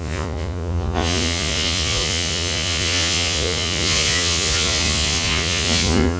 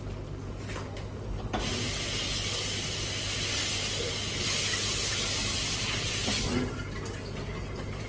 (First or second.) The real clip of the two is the second